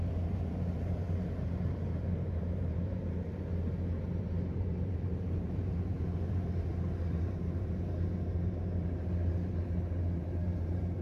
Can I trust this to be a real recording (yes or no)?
no